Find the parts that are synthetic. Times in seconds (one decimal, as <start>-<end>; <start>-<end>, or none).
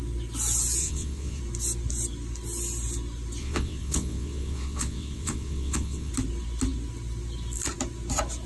0.8-1.4; 3.4-6.1